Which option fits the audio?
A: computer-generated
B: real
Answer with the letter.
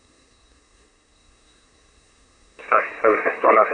A